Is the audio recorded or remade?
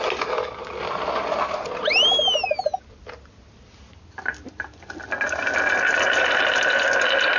recorded